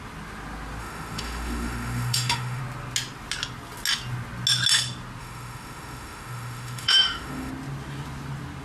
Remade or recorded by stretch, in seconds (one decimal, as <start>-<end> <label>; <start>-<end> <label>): 0.0-0.8 recorded; 0.8-2.6 remade; 2.6-5.2 recorded; 5.2-7.5 remade; 7.5-8.6 recorded